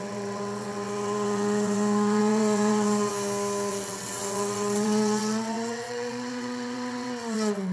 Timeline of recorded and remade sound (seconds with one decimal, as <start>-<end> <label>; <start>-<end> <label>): 0.0-3.1 remade; 3.1-3.7 recorded; 3.7-7.7 remade